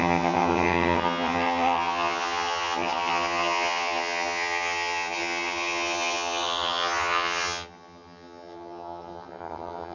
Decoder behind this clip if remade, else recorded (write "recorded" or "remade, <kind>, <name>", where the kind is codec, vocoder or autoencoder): remade, vocoder, HiFi-GAN